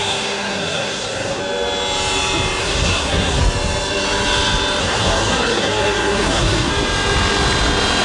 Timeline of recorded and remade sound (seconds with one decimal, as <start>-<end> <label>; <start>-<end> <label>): 0.0-1.4 remade; 1.4-2.6 recorded; 2.6-3.4 remade; 3.4-4.8 recorded; 4.8-6.7 remade; 6.7-8.0 recorded